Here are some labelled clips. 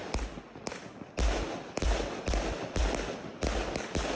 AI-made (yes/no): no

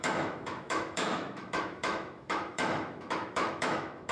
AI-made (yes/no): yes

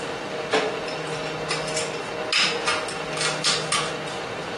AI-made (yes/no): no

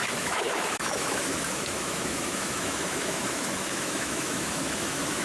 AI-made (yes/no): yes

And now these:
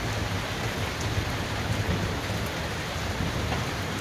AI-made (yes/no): no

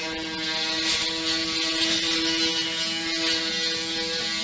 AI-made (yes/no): no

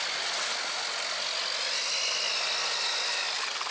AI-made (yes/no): no